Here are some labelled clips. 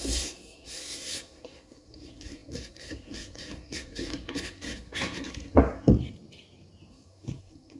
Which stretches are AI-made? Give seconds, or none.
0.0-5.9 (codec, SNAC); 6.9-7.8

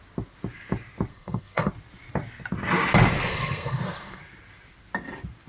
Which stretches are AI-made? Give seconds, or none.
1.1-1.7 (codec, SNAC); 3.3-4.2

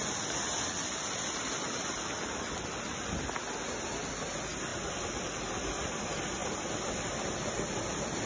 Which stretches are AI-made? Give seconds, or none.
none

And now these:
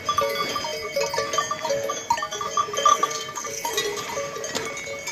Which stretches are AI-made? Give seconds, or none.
2.9-3.7 (codec, SNAC)

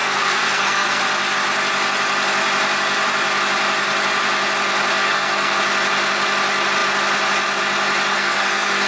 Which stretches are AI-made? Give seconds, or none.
0.0-1.0 (codec, SNAC); 5.0-5.6; 8.1-8.9

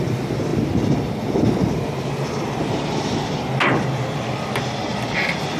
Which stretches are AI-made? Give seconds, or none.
none